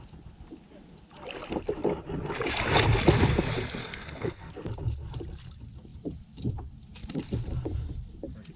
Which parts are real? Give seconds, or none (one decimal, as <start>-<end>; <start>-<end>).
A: 0.0-3.8; 4.5-8.6